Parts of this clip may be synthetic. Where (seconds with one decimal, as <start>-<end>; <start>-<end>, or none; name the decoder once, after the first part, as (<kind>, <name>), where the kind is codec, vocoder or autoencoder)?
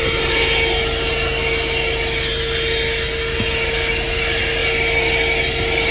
none